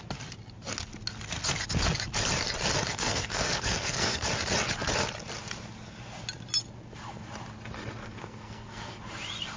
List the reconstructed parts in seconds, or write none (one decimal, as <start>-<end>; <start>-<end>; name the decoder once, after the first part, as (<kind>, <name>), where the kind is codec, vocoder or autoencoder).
2.9-4.3 (codec, SNAC); 8.0-9.0